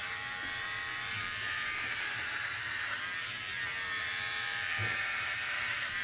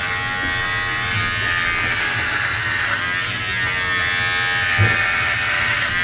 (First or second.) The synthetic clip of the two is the first